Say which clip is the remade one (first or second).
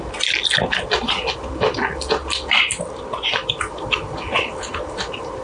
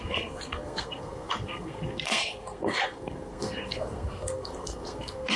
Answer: second